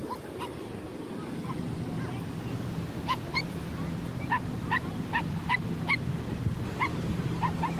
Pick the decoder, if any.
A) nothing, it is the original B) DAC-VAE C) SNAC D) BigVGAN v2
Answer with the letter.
A